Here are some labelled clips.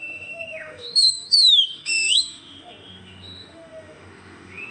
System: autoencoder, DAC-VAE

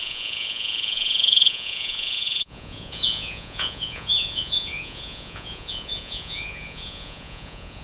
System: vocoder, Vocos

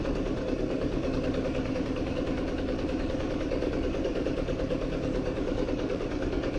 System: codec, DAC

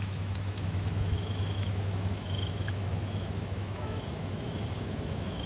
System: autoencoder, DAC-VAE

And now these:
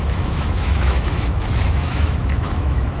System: autoencoder, DAC-VAE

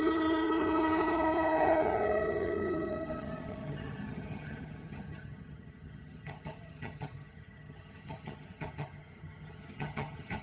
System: vocoder, HiFi-GAN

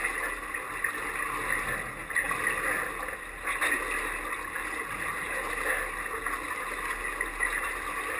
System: none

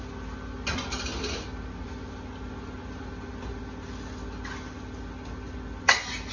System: none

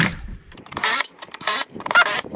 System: vocoder, BigVGAN v2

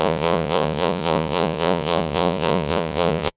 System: vocoder, Vocos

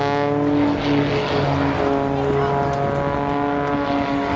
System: none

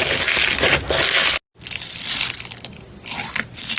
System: none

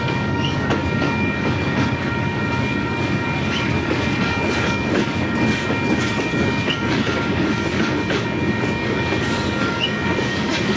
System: codec, DAC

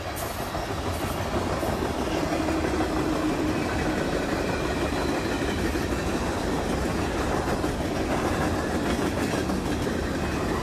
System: none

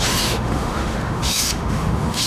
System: autoencoder, DAC-VAE